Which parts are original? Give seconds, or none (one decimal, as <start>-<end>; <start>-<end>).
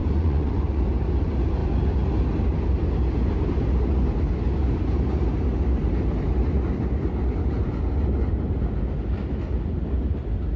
0.8-10.6